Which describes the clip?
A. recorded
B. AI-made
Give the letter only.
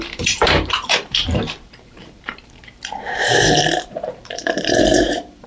B